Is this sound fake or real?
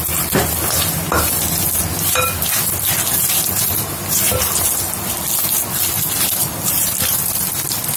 real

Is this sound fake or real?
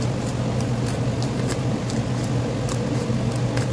real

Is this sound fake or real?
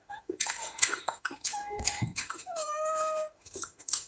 fake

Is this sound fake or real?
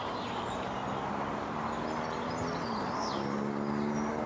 real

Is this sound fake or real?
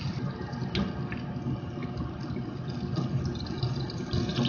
real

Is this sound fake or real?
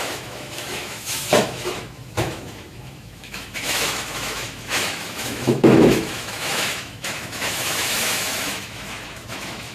fake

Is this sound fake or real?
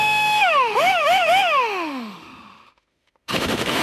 fake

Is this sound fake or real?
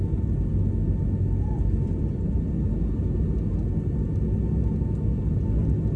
real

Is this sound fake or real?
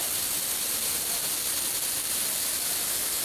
real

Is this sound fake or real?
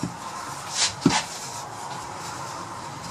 real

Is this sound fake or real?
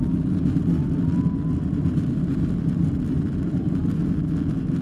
real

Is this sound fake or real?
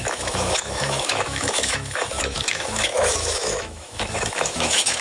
fake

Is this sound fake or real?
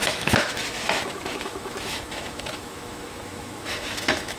fake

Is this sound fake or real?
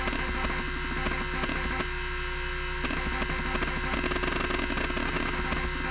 real